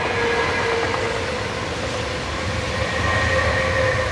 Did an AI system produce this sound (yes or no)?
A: no